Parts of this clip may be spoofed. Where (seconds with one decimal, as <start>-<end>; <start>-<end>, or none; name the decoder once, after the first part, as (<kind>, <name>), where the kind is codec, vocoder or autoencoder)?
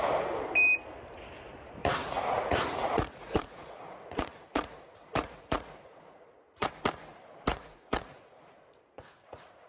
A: 1.8-6.7 (vocoder, Vocos); 7.5-9.7